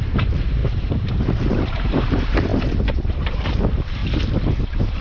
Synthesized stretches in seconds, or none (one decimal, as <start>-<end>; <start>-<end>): 0.0-4.0; 4.6-5.0